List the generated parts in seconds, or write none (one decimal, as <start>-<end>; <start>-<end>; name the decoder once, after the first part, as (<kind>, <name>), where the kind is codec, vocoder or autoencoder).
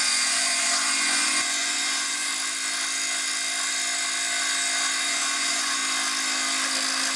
0.0-2.3 (vocoder, Vocos); 5.0-5.8